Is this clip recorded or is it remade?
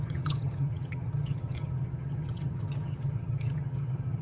remade